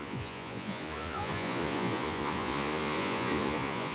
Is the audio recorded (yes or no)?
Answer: no